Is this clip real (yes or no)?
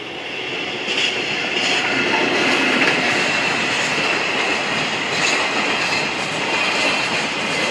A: yes